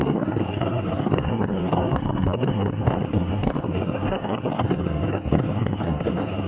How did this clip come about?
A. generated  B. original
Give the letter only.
A